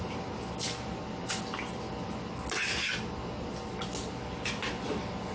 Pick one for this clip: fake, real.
real